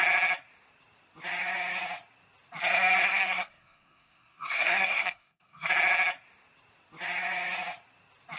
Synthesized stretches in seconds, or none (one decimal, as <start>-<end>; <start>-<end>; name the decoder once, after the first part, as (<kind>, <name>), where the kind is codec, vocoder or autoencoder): 3.0-5.7 (codec, SNAC)